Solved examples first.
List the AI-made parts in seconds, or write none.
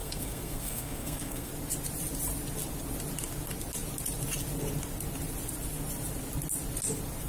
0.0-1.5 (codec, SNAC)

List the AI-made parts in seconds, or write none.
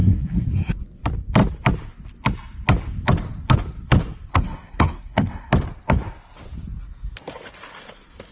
0.0-0.7 (codec, SNAC); 4.3-5.5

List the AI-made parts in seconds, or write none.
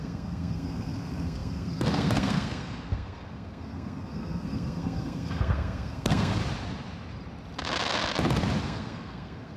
0.0-6.4 (codec, SNAC); 8.6-9.6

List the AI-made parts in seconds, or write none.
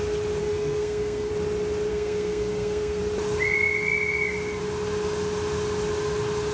0.4-1.3 (codec, SNAC); 1.9-3.0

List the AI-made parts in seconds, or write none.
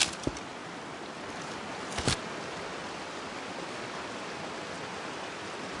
none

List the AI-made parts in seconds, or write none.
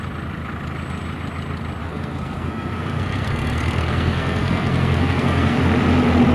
1.8-5.6 (codec, SNAC)